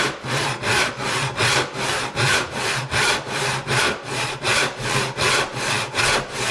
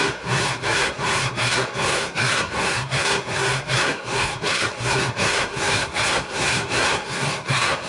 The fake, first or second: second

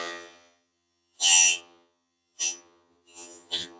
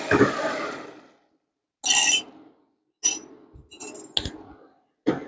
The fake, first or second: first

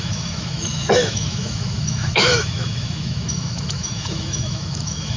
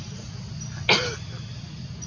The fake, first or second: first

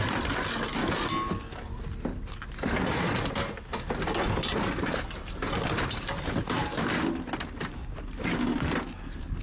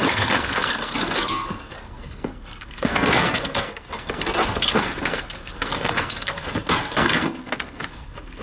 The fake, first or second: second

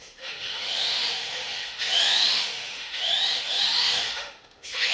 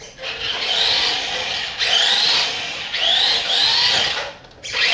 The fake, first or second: first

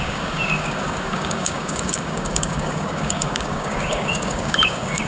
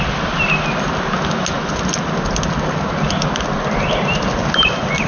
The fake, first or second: first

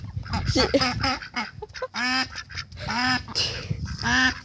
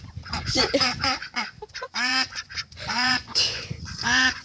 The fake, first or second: second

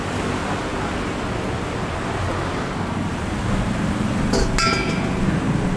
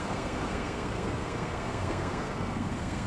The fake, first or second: second